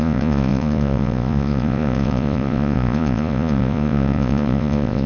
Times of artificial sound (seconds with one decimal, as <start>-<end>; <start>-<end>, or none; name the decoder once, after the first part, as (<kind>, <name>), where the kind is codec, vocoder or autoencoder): 0.0-5.1 (vocoder, Vocos)